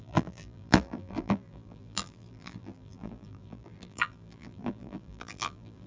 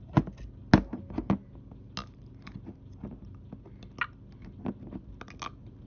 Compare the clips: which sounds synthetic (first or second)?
first